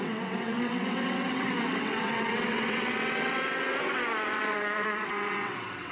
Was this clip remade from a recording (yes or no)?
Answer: yes